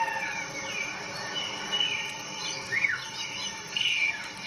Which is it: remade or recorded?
recorded